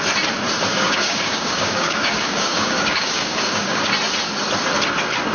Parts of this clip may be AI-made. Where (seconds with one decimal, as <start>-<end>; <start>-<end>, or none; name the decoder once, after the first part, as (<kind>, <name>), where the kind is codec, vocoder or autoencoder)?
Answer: 0.7-3.9 (codec, DAC)